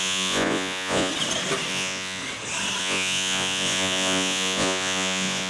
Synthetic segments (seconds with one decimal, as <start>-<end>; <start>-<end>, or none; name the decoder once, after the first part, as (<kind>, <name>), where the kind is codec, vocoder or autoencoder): 0.0-1.1 (vocoder, Vocos); 1.7-2.2; 2.8-5.5